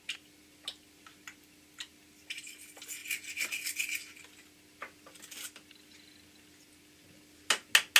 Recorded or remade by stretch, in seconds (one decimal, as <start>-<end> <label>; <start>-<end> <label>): 0.0-8.0 recorded